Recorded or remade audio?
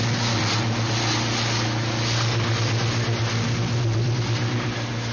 recorded